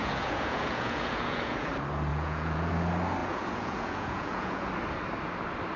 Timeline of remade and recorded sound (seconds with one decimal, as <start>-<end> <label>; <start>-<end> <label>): 0.0-1.7 remade; 1.7-2.1 recorded; 2.1-2.7 remade; 2.7-3.2 recorded; 3.2-4.7 remade; 4.7-5.8 recorded

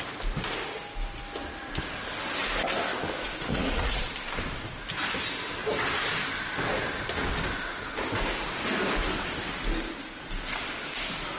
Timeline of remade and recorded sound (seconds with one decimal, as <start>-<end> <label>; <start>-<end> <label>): 0.0-2.9 recorded; 2.9-4.0 remade; 4.0-11.4 recorded

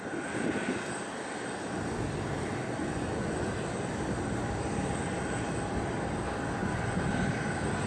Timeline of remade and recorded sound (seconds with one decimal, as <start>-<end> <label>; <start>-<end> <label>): 0.0-2.8 recorded; 2.8-3.5 remade; 3.5-6.6 recorded; 6.6-7.1 remade; 7.1-7.9 recorded

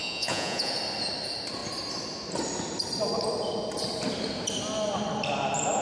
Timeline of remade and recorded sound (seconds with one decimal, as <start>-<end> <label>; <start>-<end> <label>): 0.0-0.7 remade; 0.7-5.8 recorded

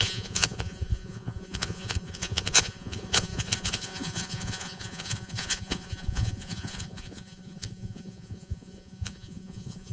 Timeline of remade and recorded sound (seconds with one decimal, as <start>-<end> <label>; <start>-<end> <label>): 0.0-9.9 remade